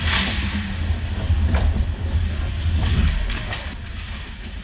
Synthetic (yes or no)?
no